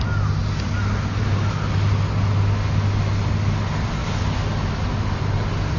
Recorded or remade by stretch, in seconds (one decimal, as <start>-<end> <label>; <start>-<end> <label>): 0.0-5.8 recorded